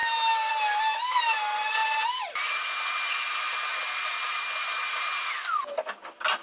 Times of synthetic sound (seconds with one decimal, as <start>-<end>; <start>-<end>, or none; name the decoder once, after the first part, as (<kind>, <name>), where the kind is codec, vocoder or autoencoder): none